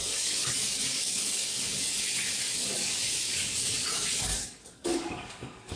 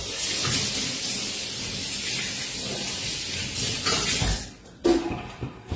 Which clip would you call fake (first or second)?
first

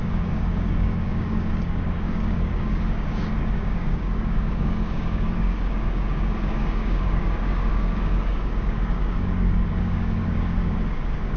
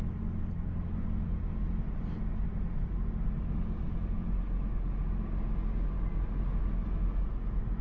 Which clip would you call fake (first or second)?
first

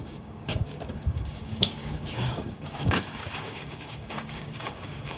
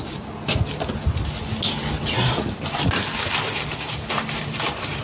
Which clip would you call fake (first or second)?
first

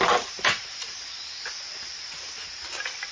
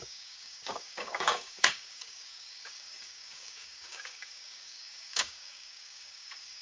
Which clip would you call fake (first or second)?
second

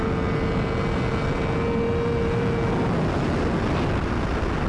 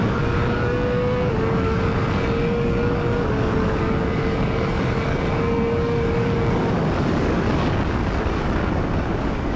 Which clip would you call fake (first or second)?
second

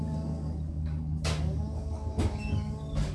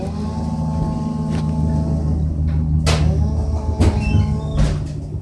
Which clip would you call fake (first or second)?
first